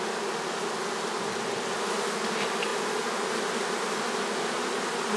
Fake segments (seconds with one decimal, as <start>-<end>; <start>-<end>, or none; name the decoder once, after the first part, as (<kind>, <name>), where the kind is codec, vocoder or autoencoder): none